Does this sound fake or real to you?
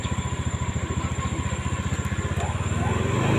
real